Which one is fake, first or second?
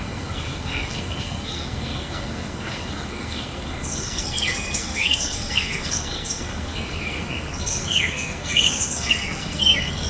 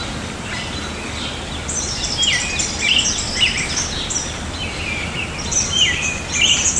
first